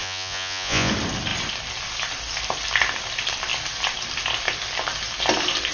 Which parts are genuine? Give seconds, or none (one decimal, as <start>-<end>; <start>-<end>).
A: 0.9-5.7